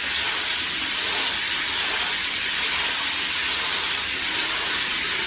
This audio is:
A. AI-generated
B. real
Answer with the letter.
B